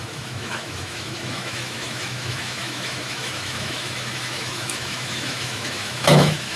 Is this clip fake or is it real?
fake